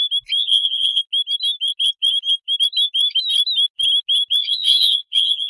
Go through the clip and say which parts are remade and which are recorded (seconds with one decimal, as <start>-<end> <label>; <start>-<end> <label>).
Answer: 0.0-0.4 recorded; 0.4-1.0 remade; 1.0-4.4 recorded; 4.4-5.5 remade